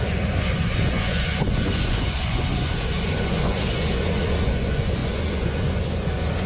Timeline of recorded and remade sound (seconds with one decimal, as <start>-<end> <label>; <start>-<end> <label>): 0.0-6.5 remade